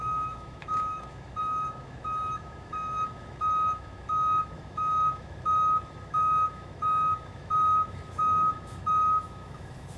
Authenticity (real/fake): fake